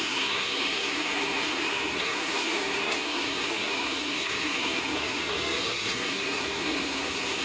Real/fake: fake